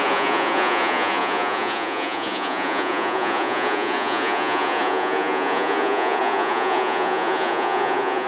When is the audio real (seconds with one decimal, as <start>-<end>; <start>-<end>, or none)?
none